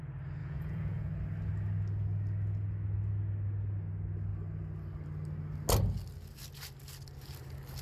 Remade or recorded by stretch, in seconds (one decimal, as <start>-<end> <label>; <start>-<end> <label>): 0.0-0.4 recorded; 0.4-1.1 remade; 1.1-7.8 recorded